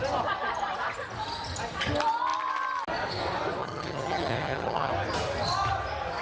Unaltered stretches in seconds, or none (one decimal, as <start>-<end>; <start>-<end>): 0.0-3.6; 4.9-6.2